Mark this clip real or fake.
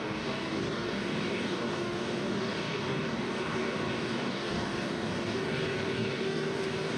fake